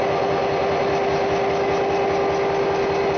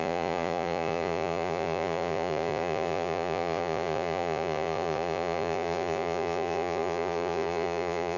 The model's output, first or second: second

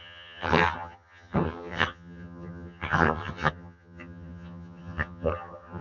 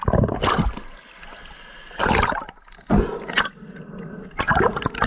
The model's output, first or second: first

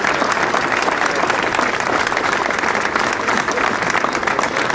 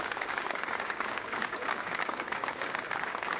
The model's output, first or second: second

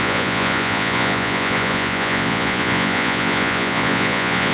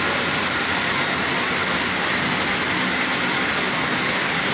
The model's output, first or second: first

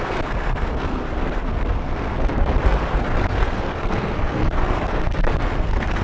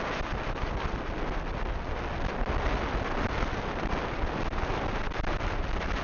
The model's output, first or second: first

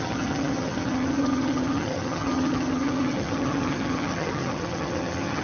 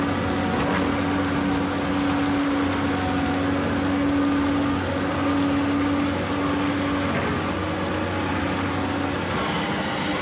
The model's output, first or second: first